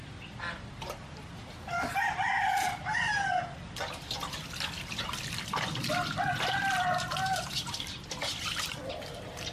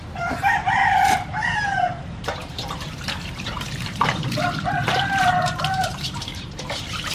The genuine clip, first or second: first